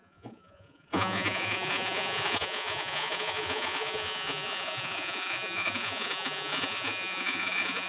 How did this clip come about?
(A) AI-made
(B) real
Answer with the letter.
A